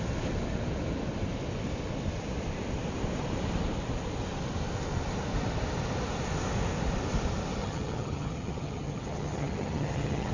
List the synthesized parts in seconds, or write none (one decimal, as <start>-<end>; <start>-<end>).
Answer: 7.6-10.3